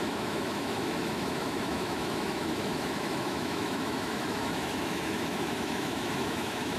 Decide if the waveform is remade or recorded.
remade